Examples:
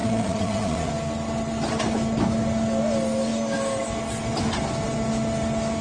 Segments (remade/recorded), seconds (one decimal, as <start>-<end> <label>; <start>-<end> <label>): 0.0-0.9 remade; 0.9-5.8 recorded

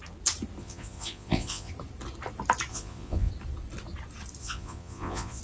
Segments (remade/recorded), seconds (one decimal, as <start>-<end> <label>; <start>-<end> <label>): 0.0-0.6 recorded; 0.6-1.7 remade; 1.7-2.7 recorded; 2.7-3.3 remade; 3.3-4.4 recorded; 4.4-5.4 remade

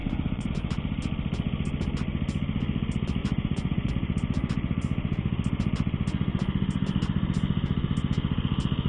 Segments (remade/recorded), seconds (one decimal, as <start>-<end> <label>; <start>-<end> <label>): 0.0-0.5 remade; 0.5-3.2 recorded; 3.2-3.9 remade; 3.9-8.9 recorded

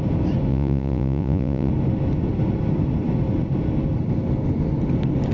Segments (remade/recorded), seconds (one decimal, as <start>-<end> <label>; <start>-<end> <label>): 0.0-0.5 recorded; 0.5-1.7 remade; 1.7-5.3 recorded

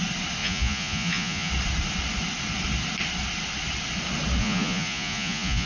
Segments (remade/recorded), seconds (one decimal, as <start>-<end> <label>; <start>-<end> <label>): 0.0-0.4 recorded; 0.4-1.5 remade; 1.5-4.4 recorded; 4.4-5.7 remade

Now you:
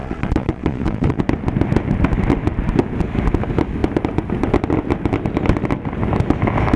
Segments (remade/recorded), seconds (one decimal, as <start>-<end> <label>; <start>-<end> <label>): 0.0-1.2 remade; 1.2-6.8 recorded

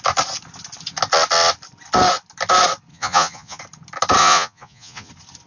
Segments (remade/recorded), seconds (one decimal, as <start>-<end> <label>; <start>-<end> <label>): 0.0-2.9 recorded; 2.9-3.6 remade; 3.6-4.2 recorded; 4.2-5.1 remade; 5.1-5.5 recorded

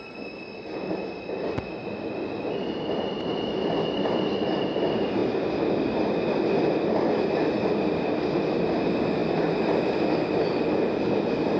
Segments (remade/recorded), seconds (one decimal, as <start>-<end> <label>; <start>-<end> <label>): 0.0-11.6 recorded